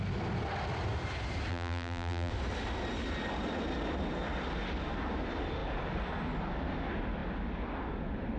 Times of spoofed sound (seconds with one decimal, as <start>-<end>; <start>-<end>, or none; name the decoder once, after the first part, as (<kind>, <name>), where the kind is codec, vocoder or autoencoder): 1.5-2.3 (vocoder, BigVGAN v2)